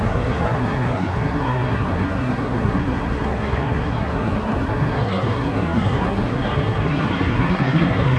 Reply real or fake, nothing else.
fake